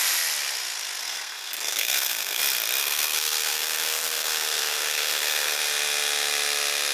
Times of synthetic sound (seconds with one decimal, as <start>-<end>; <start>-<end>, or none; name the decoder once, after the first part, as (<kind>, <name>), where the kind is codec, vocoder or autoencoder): 1.0-2.4 (codec, SNAC); 2.8-5.6